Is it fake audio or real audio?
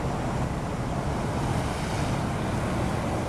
real